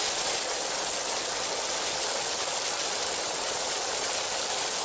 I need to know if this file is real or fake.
real